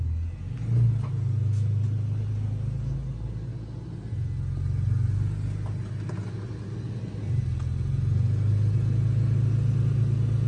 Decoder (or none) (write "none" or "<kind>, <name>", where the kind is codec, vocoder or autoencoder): none